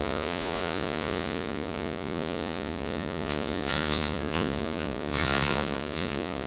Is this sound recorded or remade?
remade